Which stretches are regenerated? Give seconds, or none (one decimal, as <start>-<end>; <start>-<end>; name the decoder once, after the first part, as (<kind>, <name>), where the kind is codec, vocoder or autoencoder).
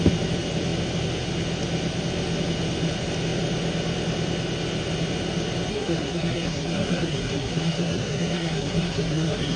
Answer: 5.7-9.6 (codec, SNAC)